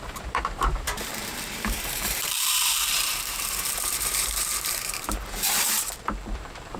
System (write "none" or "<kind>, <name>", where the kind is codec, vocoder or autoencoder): vocoder, BigVGAN v2